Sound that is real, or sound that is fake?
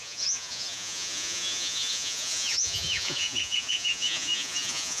fake